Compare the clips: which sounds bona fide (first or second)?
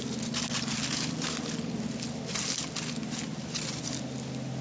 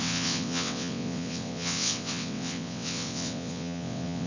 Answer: first